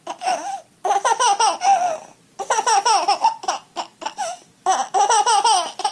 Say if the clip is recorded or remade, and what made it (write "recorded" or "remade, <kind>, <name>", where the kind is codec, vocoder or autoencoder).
recorded